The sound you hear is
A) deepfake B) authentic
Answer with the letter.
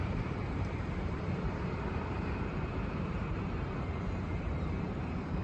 A